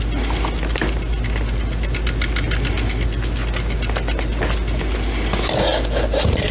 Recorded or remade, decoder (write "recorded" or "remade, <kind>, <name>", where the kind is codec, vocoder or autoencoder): recorded